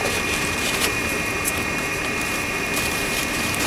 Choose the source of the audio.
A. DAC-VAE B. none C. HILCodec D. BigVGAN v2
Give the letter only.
D